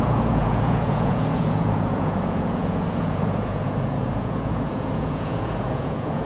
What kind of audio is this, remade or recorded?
remade